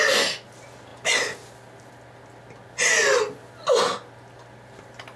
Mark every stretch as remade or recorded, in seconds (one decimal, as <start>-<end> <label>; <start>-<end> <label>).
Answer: 0.0-5.2 recorded